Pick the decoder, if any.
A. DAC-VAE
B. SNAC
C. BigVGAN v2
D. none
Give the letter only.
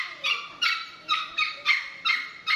C